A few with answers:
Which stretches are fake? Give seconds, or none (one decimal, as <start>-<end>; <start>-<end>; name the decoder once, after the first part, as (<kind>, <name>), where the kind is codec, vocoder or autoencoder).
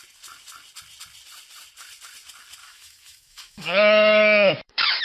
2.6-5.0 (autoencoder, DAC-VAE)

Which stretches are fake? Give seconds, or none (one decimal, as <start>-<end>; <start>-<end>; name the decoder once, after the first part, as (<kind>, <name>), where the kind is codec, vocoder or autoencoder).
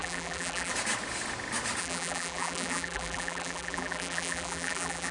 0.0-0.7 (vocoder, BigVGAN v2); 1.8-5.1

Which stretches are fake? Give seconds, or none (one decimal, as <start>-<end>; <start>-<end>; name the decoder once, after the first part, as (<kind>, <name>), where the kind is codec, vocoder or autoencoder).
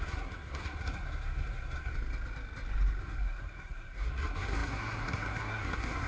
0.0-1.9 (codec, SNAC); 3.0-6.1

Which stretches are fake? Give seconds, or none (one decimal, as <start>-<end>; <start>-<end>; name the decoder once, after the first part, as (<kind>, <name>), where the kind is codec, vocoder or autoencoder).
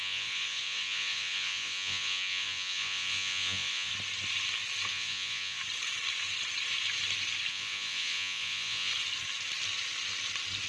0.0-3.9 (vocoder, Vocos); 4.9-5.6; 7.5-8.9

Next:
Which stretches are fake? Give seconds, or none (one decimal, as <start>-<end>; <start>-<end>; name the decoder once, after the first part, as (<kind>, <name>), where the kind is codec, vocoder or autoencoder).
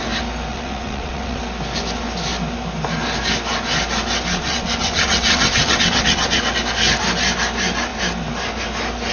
0.5-1.4 (vocoder, WaveNeXt); 4.3-6.4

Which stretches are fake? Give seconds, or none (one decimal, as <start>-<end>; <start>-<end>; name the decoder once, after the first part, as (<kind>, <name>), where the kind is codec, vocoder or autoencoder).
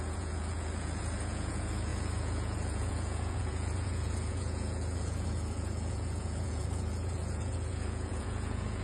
0.0-8.8 (vocoder, Vocos)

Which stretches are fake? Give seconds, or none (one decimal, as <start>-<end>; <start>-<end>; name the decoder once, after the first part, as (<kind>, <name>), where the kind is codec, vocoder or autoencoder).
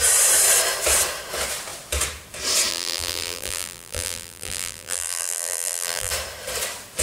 2.7-6.1 (vocoder, BigVGAN v2)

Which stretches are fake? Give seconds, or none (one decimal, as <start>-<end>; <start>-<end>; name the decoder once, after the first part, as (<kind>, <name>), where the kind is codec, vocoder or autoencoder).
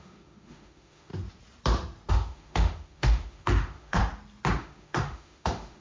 0.0-1.1 (autoencoder, DAC-VAE); 2.1-4.0; 4.6-5.8